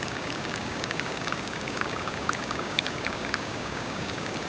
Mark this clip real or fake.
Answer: fake